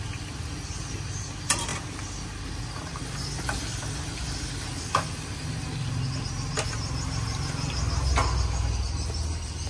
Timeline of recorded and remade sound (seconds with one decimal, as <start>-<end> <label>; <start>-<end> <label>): 0.0-9.7 recorded